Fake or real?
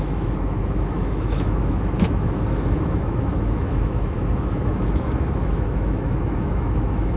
fake